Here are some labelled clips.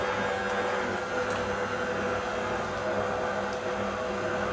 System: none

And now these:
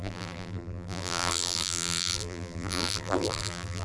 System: vocoder, BigVGAN v2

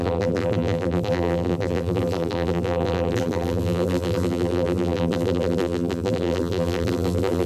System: vocoder, BigVGAN v2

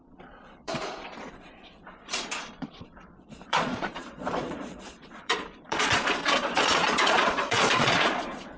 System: vocoder, Vocos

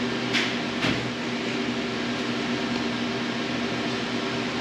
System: none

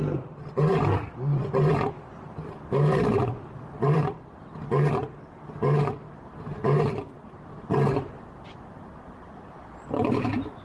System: none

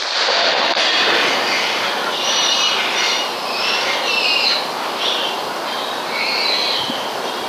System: none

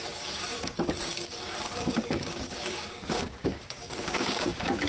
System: codec, DAC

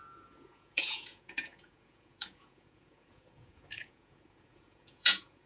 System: vocoder, Vocos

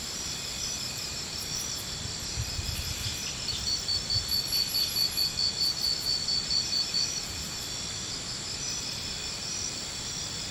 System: none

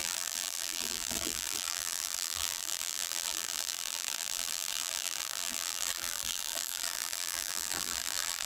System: vocoder, BigVGAN v2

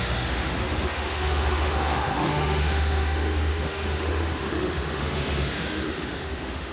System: autoencoder, DAC-VAE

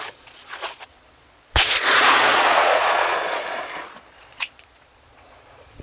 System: vocoder, Vocos